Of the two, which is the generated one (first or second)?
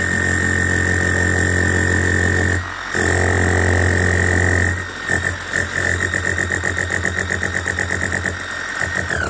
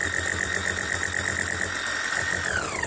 second